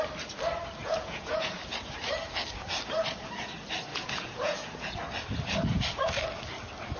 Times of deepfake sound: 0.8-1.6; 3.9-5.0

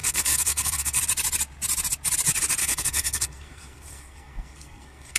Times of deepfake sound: 0.0-1.0; 2.6-5.2

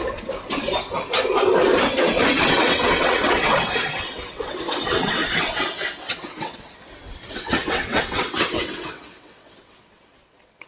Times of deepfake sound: 2.4-10.7

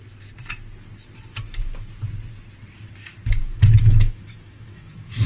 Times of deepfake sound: 1.3-1.9; 3.4-5.3

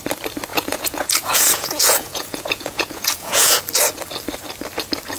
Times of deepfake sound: 0.5-3.6

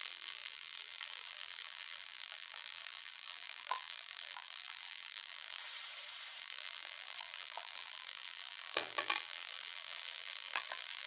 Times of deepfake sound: 0.0-5.6; 6.4-11.1

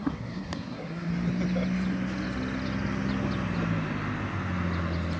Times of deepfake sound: 0.0-1.1